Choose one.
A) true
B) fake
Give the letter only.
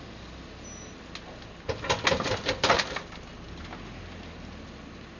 A